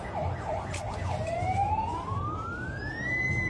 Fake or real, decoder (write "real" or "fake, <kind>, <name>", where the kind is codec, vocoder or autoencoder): real